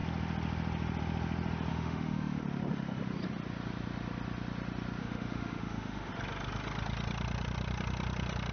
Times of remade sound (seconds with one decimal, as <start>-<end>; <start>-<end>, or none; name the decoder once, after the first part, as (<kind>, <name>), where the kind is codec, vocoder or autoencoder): 1.7-2.4 (autoencoder, DAC-VAE); 5.0-6.1